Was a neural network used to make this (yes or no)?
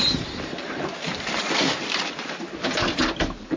yes